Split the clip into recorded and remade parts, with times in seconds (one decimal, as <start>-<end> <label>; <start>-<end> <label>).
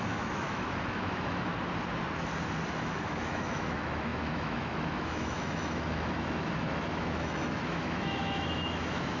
0.0-1.5 remade; 1.5-2.8 recorded; 2.8-9.2 remade